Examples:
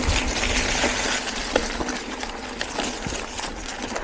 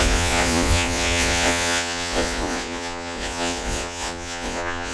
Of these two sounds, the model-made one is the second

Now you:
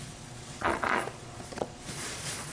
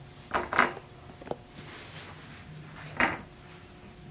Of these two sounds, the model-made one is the first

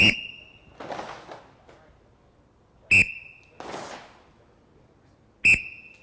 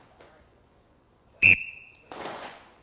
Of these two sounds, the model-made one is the second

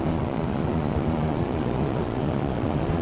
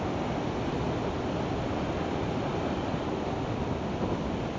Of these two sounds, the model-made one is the first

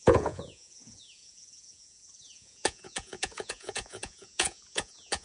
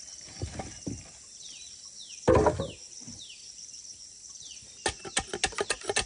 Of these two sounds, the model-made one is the first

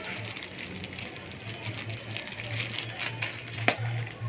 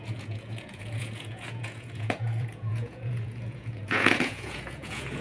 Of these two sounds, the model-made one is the second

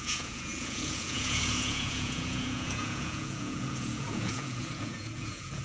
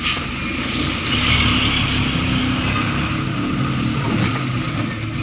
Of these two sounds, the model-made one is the first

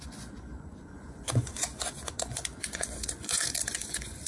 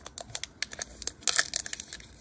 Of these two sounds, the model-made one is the first